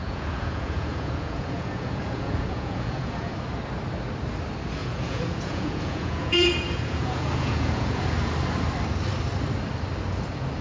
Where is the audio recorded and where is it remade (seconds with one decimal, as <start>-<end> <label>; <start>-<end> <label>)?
0.0-3.3 remade; 3.3-4.8 recorded; 4.8-8.0 remade; 8.0-10.6 recorded